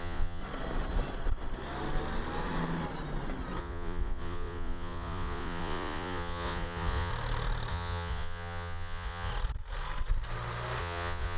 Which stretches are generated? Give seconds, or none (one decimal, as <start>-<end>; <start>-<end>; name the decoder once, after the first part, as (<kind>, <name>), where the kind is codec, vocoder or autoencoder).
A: 0.0-0.4 (vocoder, Vocos); 3.6-7.1; 7.7-9.3; 10.8-11.4